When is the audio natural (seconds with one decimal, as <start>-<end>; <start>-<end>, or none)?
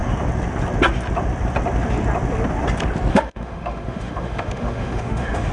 0.0-3.1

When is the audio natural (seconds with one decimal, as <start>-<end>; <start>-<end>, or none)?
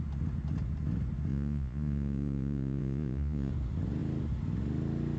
0.0-1.3; 3.5-5.2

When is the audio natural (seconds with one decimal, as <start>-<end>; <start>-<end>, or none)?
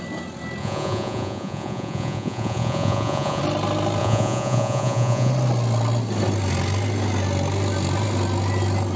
0.0-0.6; 3.4-4.0; 5.3-9.0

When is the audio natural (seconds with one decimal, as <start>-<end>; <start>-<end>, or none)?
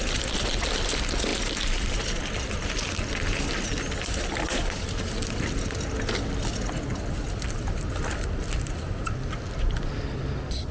0.0-10.7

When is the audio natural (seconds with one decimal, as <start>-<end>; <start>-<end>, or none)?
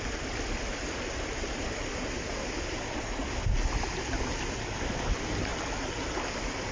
0.0-6.7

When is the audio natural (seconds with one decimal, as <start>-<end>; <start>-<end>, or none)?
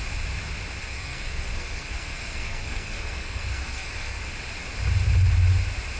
0.0-0.8; 4.2-6.0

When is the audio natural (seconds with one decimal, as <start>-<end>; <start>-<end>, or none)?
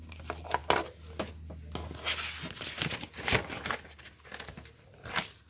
0.0-5.5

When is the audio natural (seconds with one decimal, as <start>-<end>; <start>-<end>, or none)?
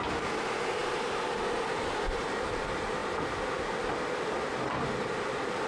0.0-5.7